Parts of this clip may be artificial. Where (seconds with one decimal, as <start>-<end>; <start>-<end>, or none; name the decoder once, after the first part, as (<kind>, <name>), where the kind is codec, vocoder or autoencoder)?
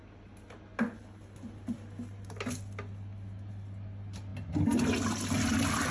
none